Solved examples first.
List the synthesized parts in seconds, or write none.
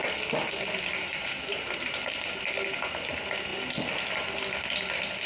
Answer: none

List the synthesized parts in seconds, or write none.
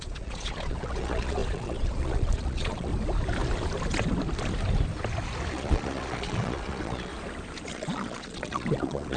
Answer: 0.0-2.9 (vocoder, Vocos); 5.5-7.1; 7.7-9.2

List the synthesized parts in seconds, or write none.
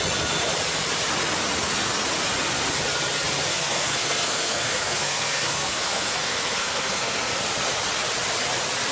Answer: 3.5-7.3 (codec, SNAC)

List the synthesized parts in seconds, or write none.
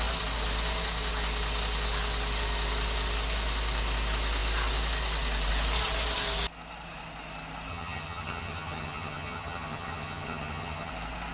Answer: 7.7-10.9 (vocoder, HiFi-GAN)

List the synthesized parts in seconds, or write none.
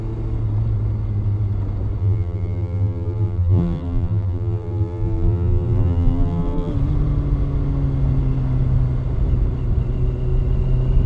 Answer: 2.0-6.7 (vocoder, BigVGAN v2)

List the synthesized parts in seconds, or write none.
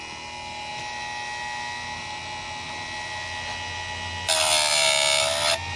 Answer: none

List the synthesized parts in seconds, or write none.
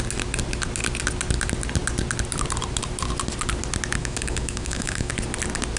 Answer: 4.0-5.1 (autoencoder, DAC-VAE)